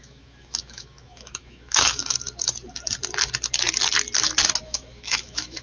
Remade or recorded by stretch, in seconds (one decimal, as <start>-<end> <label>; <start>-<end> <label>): 0.0-2.0 remade; 2.0-4.6 recorded; 4.6-5.6 remade

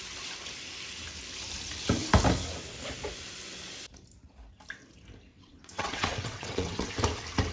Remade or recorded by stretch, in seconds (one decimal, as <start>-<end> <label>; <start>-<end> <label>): 0.0-5.3 recorded; 5.3-6.9 remade; 6.9-7.5 recorded

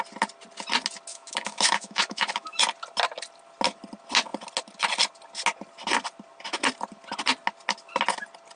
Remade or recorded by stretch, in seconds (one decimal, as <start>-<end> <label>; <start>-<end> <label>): 0.0-1.1 recorded; 1.1-2.6 remade; 2.6-8.6 recorded

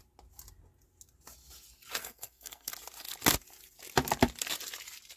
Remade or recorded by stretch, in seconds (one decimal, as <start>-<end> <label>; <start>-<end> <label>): 0.0-2.0 recorded; 2.0-2.7 remade; 2.7-5.2 recorded